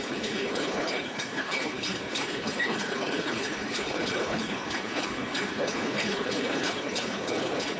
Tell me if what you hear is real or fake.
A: fake